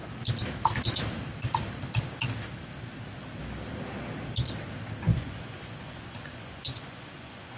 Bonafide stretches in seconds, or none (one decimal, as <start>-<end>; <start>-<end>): 0.0-5.1